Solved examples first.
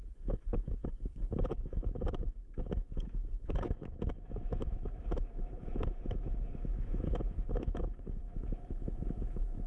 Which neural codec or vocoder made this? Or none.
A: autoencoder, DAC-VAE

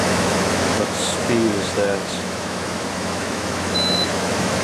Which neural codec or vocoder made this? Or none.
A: autoencoder, DAC-VAE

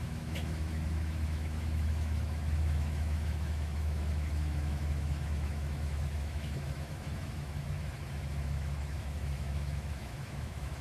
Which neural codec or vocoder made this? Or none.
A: autoencoder, DAC-VAE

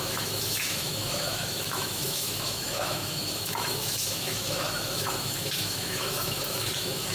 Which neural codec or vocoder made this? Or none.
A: autoencoder, DAC-VAE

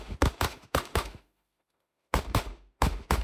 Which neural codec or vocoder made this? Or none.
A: autoencoder, DAC-VAE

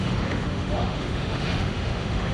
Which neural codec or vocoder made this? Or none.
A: autoencoder, DAC-VAE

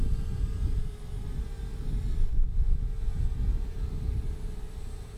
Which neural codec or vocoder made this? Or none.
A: none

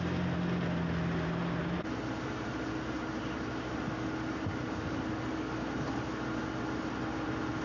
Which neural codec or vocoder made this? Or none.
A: none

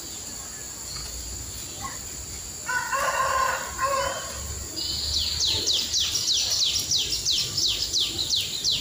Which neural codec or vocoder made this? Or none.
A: none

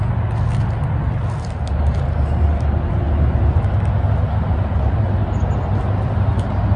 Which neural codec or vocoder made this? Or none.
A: none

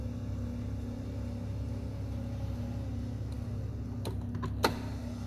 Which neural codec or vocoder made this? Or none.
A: none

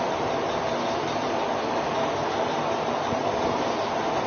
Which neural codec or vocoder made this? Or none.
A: none